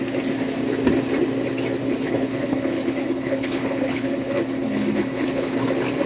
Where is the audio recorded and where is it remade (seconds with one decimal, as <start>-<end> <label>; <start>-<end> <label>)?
0.0-1.8 recorded; 1.8-5.5 remade; 5.5-6.1 recorded